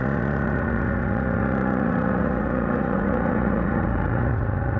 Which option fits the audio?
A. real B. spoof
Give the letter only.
B